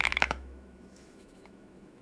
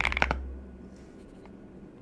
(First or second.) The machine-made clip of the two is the first